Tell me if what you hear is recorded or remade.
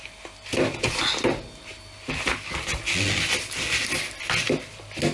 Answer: recorded